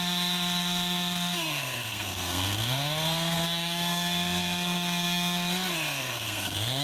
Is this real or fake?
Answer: fake